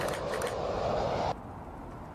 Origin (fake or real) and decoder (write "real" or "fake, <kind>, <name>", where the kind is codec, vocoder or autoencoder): real